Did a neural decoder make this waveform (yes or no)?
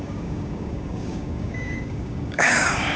yes